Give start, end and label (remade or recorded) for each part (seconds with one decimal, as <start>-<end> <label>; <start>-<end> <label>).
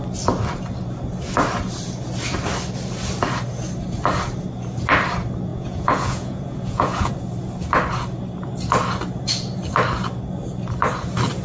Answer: 0.0-5.5 recorded; 5.5-7.1 remade; 7.1-11.4 recorded